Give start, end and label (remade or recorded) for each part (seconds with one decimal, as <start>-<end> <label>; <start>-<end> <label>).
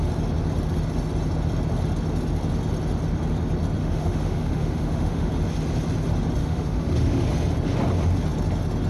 0.0-3.8 recorded; 3.8-5.3 remade; 5.3-6.4 recorded; 6.4-7.3 remade; 7.3-8.9 recorded